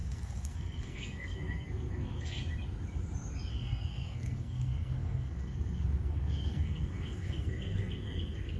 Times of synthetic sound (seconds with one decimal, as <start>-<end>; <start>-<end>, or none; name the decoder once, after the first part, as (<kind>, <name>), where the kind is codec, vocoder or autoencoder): 0.0-2.4 (codec, SNAC); 3.5-8.6